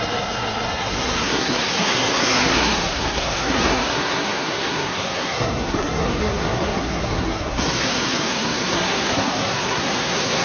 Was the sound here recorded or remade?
remade